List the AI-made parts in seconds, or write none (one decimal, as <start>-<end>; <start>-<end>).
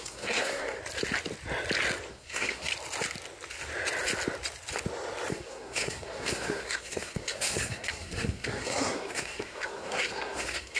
0.0-0.8; 2.1-2.7; 5.3-10.8